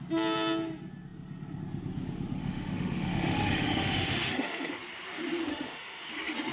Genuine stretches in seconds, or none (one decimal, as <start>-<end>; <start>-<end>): 0.0-2.4; 4.7-5.5; 6.1-6.5